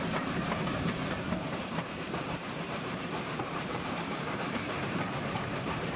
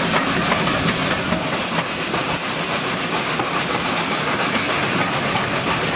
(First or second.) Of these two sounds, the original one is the second